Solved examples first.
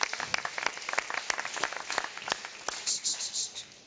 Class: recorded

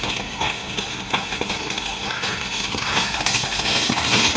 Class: remade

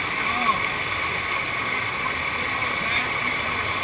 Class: recorded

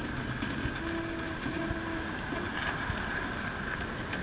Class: recorded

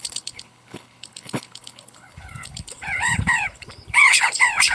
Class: remade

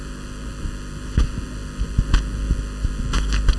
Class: recorded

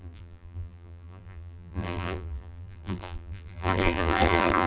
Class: remade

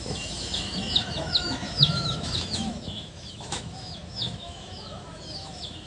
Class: remade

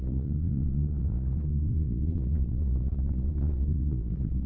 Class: remade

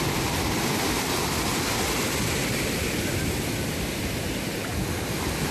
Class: recorded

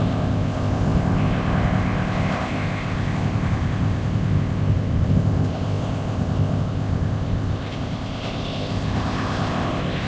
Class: remade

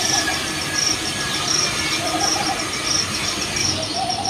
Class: remade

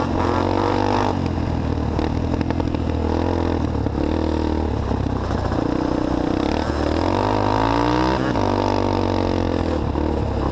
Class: recorded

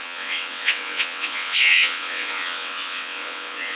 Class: remade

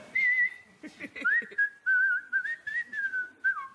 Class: recorded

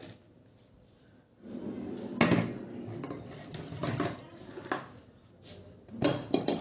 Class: recorded